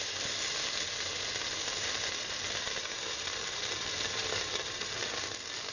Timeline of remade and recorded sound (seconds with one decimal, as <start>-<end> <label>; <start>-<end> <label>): 0.0-1.6 recorded; 1.6-5.0 remade; 5.0-5.7 recorded

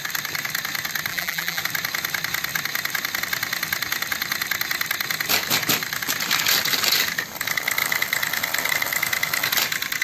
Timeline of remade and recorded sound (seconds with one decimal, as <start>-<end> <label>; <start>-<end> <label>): 0.0-1.1 recorded; 1.1-1.6 remade; 1.6-10.0 recorded

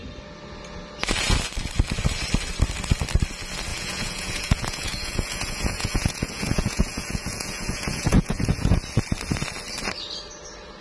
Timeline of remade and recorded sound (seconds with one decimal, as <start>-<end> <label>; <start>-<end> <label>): 0.0-3.7 recorded; 3.7-8.8 remade; 8.8-10.8 recorded

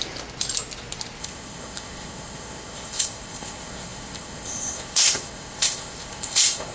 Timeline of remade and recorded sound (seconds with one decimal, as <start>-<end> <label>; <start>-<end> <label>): 0.0-1.2 recorded; 1.2-6.7 remade

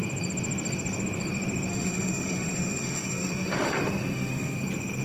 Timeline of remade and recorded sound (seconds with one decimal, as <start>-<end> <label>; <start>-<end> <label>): 0.0-1.7 recorded; 1.7-4.6 remade; 4.6-5.0 recorded

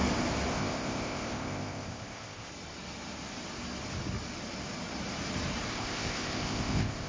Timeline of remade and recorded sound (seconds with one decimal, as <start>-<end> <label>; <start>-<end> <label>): 0.0-0.5 recorded; 0.5-2.5 remade; 2.5-5.7 recorded; 5.7-7.1 remade